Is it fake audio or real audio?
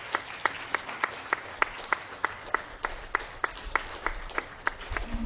real